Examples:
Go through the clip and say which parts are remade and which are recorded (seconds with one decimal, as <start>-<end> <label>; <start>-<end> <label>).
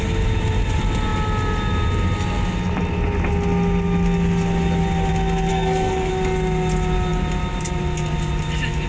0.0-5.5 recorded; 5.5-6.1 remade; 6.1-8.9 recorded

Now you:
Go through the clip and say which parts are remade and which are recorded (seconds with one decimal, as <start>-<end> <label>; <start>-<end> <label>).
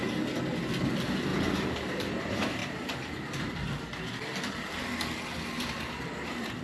0.0-1.3 recorded; 1.3-2.1 remade; 2.1-6.6 recorded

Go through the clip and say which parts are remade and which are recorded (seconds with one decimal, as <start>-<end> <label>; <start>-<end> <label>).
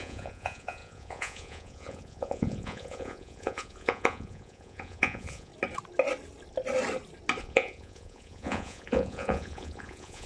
0.0-5.5 remade; 5.5-7.4 recorded; 7.4-10.3 remade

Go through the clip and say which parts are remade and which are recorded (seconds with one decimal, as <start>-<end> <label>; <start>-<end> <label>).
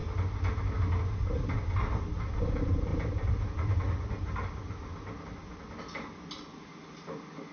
0.0-7.5 recorded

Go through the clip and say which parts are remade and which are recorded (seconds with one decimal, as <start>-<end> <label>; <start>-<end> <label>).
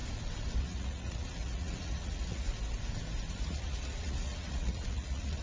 0.0-0.6 recorded; 0.6-2.5 remade; 2.5-3.3 recorded; 3.3-5.4 remade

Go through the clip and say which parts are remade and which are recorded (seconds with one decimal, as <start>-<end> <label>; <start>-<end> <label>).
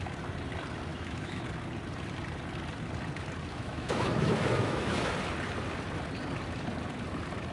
0.0-0.9 recorded; 0.9-1.4 remade; 1.4-3.5 recorded; 3.5-5.1 remade; 5.1-7.5 recorded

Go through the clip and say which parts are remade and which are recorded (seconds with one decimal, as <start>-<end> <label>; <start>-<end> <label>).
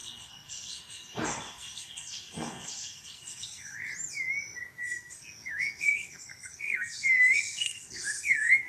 0.0-3.9 remade; 3.9-4.8 recorded; 4.8-8.7 remade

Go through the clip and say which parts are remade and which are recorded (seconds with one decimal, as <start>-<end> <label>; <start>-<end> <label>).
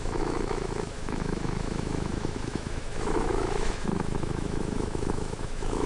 0.0-5.9 remade